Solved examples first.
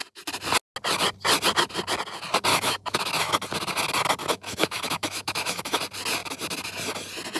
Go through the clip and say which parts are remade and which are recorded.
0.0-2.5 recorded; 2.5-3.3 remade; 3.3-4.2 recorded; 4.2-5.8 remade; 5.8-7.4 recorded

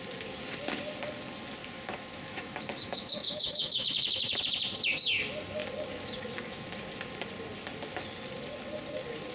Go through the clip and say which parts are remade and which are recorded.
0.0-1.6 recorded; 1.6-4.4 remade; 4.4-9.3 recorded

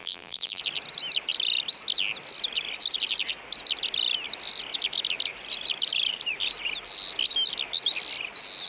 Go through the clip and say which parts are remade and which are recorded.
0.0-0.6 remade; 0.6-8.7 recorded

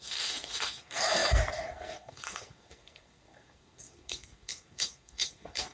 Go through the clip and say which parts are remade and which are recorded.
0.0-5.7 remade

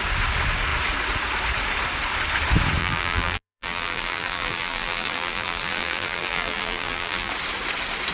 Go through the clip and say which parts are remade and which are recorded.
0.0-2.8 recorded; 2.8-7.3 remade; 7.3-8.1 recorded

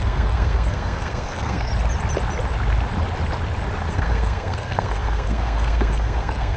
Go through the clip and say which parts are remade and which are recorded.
0.0-1.7 remade; 1.7-3.9 recorded; 3.9-6.6 remade